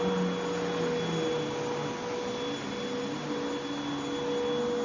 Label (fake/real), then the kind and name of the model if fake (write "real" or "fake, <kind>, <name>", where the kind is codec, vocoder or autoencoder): real